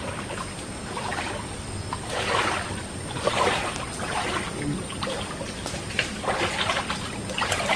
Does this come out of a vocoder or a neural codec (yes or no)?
no